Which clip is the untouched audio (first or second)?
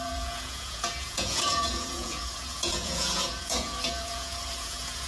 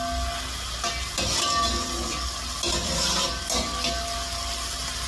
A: second